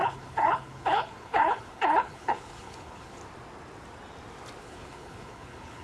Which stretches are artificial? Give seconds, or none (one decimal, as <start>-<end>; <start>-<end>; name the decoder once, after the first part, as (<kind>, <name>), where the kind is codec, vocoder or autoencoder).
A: 0.0-3.2 (codec, HILCodec); 4.6-5.8